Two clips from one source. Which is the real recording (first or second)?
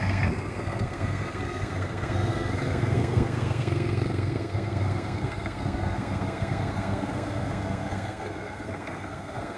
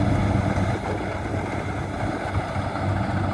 second